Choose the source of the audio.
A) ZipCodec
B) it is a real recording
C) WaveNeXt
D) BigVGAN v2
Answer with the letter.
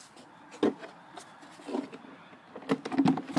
B